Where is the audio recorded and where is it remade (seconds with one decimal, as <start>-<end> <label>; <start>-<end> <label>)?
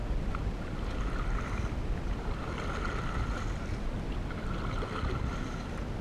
0.0-6.0 recorded